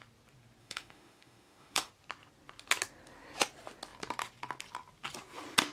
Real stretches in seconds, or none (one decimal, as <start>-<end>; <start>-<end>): 0.0-0.6; 1.9-5.7